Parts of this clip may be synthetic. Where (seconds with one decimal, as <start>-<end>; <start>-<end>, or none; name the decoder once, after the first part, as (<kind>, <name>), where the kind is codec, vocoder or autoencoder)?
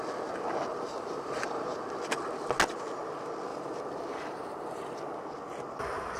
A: 0.7-1.8 (vocoder, BigVGAN v2); 3.5-5.0